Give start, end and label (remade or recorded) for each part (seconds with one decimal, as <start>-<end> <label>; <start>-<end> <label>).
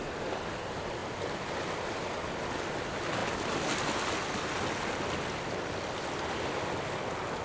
0.0-7.4 recorded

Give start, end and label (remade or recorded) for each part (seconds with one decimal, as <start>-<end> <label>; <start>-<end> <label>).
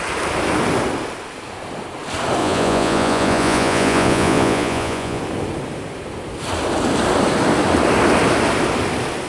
0.0-2.4 recorded; 2.4-5.2 remade; 5.2-9.3 recorded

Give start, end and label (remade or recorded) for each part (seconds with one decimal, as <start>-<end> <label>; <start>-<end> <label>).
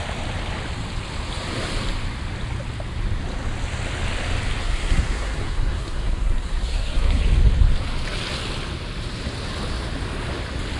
0.0-4.6 recorded; 4.6-7.2 remade; 7.2-10.8 recorded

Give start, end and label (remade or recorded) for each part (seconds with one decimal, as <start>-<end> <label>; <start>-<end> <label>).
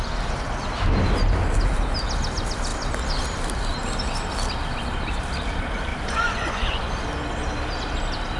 0.0-5.9 recorded; 5.9-6.9 remade; 6.9-8.4 recorded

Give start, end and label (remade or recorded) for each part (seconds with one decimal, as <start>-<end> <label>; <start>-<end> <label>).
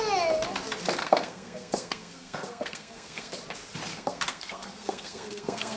0.0-1.0 recorded; 1.0-3.3 remade; 3.3-3.9 recorded; 3.9-5.8 remade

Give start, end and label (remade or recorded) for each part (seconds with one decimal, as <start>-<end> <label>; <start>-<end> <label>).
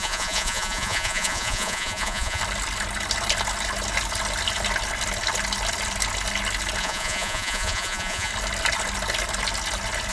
0.0-2.4 remade; 2.4-6.8 recorded; 6.8-8.3 remade; 8.3-10.1 recorded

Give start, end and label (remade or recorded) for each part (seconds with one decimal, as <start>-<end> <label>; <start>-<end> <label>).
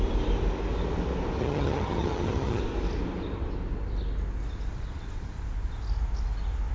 0.0-1.4 recorded; 1.4-2.6 remade; 2.6-6.7 recorded